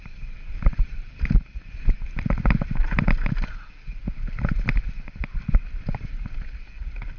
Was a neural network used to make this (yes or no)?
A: no